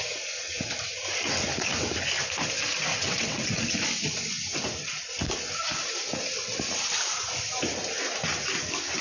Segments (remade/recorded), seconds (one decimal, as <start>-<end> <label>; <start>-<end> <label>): 0.0-2.9 recorded; 2.9-3.6 remade; 3.6-9.0 recorded